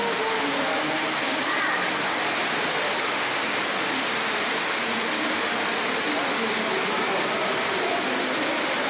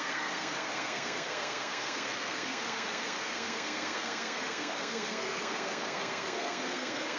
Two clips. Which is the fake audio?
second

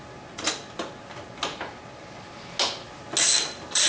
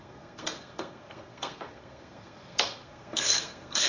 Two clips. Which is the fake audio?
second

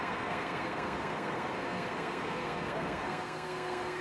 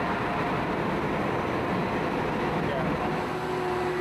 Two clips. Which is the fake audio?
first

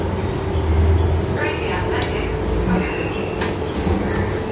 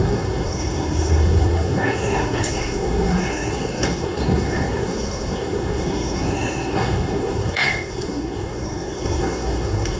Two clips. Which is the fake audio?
second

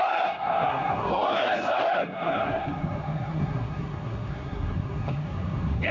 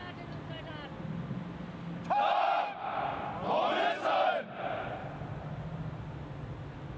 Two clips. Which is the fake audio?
first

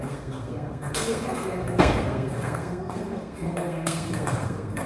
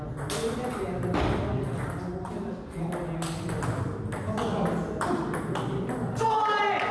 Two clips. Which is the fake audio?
first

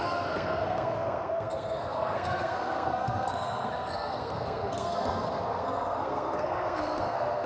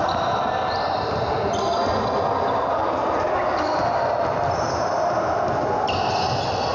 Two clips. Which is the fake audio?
first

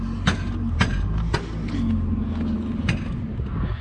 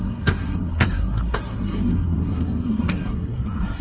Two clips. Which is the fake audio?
second